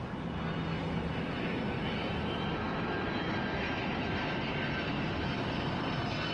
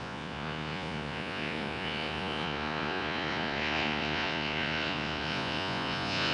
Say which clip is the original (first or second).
first